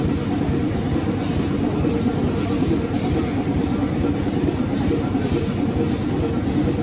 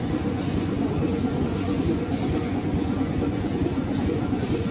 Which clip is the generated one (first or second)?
second